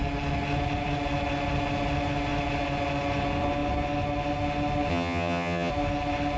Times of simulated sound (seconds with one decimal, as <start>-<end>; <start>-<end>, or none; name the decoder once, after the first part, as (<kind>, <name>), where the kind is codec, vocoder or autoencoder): 4.9-5.7 (vocoder, HiFi-GAN)

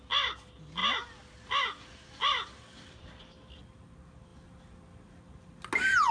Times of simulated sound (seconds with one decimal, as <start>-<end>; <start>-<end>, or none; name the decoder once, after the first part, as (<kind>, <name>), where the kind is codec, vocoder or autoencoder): none

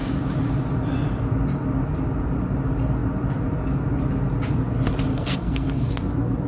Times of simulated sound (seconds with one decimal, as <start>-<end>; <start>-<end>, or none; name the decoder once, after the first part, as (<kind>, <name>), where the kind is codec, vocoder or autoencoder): 5.1-5.9 (codec, SNAC)